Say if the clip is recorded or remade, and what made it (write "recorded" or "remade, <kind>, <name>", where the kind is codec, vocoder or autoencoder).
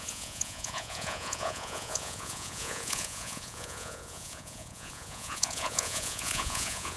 remade, vocoder, Vocos